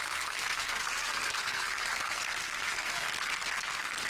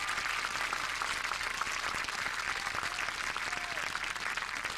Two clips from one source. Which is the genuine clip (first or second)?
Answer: second